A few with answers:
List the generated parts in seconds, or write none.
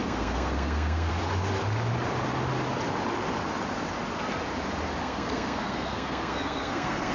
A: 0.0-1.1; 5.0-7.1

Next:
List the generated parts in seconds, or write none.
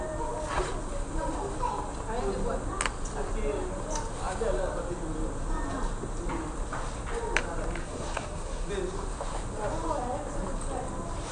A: 7.8-8.7